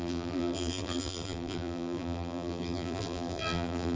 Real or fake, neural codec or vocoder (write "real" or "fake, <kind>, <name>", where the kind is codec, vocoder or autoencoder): fake, vocoder, BigVGAN v2